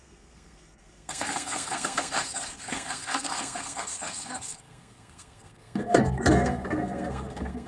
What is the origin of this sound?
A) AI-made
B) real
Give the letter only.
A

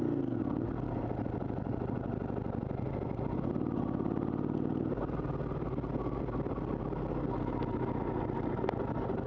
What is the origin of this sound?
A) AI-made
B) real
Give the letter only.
B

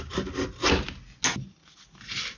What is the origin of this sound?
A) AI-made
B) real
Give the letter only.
B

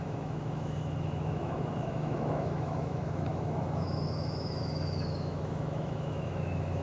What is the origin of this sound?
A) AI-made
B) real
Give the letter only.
A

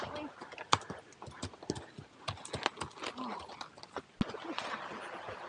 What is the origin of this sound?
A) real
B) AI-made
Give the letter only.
A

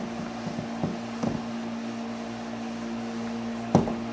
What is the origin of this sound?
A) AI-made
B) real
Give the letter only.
B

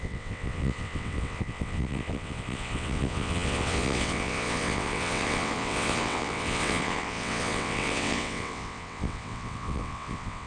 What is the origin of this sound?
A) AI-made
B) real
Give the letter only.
A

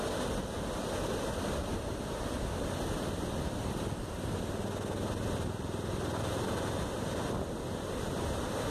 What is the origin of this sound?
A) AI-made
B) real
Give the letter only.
B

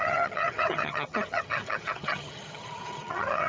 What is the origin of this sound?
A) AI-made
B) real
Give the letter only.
A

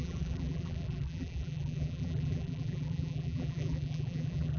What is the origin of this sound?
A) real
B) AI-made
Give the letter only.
B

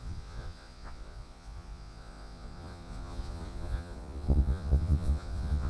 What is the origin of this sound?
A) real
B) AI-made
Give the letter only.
B